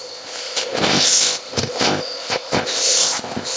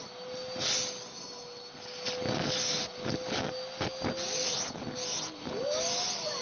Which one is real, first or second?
second